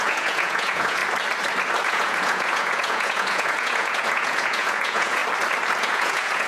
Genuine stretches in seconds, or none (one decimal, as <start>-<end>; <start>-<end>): 1.0-1.8; 5.2-5.8